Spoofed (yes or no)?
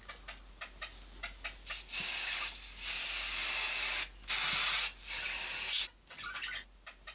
no